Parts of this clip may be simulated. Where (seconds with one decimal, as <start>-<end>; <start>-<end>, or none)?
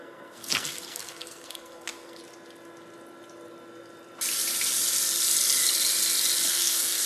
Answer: 0.0-2.2; 6.5-7.1